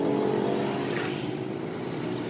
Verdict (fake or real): real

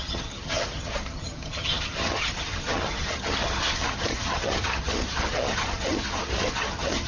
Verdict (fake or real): fake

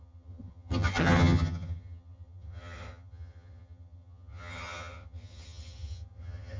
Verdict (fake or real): fake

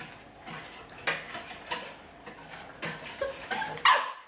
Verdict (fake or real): real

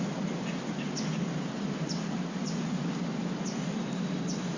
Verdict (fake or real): real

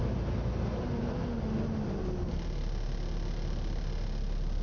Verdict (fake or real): real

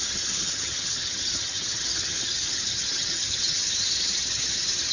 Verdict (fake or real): fake